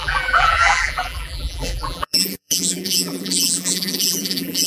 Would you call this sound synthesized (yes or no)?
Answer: yes